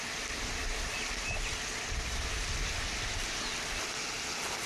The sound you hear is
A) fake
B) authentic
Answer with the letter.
A